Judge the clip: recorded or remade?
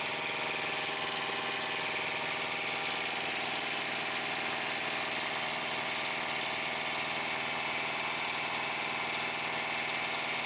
recorded